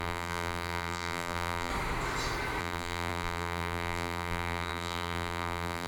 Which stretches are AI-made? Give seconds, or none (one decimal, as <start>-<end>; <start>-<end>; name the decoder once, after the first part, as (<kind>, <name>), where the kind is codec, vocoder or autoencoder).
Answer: 0.0-1.7 (vocoder, BigVGAN v2); 2.6-5.9